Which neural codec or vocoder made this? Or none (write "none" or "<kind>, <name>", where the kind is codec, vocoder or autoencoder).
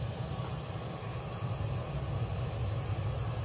vocoder, BigVGAN v2